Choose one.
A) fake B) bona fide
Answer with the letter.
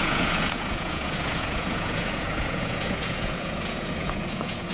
A